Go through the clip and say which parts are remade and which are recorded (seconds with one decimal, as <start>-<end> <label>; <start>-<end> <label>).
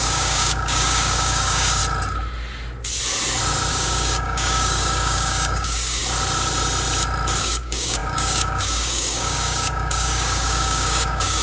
0.0-1.8 remade; 1.8-3.7 recorded; 3.7-6.0 remade; 6.0-7.4 recorded; 7.4-11.4 remade